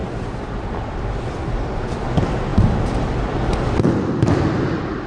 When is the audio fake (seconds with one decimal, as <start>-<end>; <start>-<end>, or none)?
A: none